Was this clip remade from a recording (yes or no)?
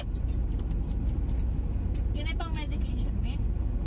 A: no